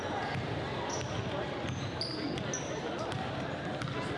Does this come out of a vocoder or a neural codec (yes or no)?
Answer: no